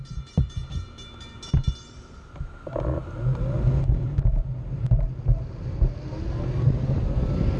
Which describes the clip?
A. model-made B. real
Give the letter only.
B